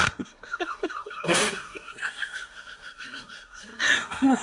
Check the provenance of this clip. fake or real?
fake